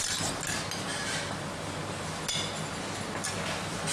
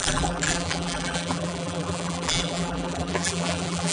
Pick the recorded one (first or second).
first